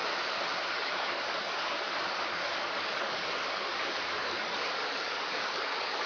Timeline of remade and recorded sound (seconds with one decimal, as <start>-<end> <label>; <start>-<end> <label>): 0.0-0.7 recorded; 0.7-6.1 remade